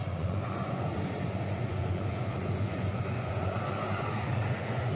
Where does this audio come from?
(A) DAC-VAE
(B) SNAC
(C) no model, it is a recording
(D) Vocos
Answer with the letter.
D